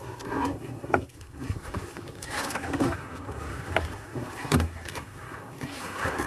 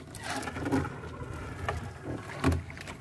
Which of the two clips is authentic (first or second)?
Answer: second